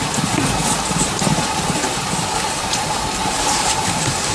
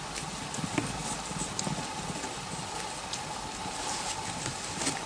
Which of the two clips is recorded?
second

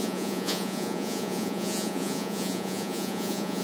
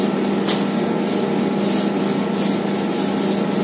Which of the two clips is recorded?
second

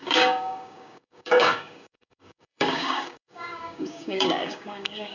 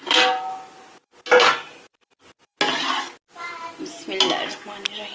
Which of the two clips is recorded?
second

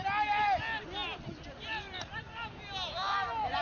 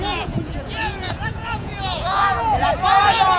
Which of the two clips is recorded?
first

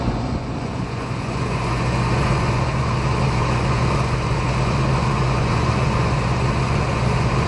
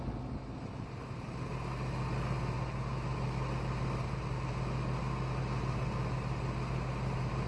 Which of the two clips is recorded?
second